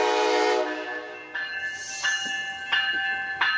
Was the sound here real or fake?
real